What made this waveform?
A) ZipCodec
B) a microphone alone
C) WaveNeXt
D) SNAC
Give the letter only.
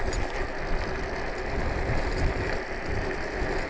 B